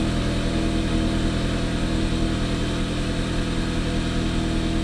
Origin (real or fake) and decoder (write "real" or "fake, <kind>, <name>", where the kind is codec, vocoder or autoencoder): real